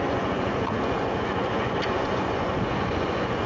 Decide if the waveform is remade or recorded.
remade